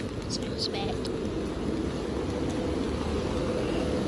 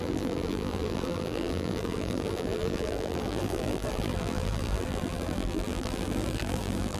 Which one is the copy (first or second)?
second